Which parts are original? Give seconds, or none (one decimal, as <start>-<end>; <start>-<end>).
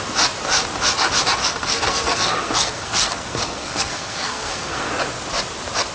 0.0-1.4; 4.9-5.9